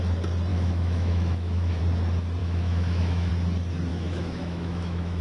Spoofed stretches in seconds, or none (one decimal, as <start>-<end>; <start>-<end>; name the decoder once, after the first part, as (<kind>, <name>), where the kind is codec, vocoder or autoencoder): 0.5-1.8 (autoencoder, DAC-VAE); 2.4-3.3; 3.9-5.2